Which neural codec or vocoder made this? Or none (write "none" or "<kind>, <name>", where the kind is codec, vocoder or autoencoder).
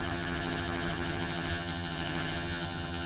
vocoder, HiFi-GAN